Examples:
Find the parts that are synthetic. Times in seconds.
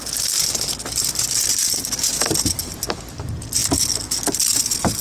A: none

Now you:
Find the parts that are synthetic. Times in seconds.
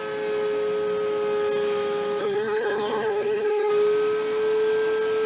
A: 2.2-3.7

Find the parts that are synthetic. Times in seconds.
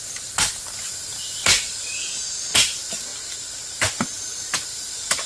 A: none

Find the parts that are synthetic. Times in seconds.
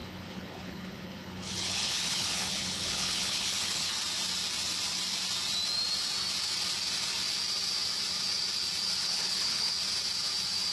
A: 0.0-3.9; 9.0-9.7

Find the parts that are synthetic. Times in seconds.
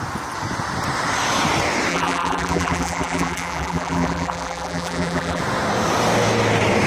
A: 1.9-5.4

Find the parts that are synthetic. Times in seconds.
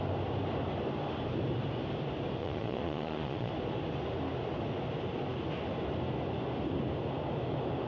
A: 2.4-3.5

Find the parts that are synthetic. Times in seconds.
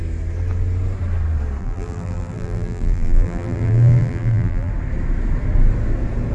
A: 1.6-4.7